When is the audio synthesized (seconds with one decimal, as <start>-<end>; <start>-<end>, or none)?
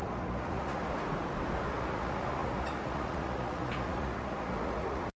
0.0-0.8; 1.7-5.2